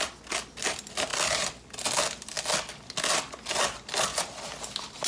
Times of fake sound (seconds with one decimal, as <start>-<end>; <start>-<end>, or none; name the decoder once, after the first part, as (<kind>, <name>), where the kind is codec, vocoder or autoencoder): none